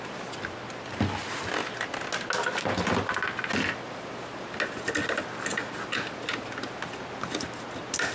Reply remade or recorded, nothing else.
recorded